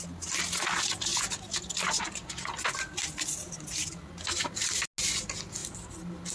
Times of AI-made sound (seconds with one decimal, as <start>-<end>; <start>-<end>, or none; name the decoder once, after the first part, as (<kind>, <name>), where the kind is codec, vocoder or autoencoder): none